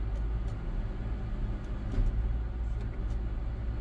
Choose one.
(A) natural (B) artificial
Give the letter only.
A